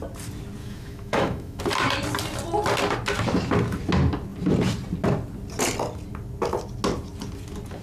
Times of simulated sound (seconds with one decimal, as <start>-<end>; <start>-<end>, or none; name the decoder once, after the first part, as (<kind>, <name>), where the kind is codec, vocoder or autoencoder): 0.6-1.6 (autoencoder, DAC-VAE)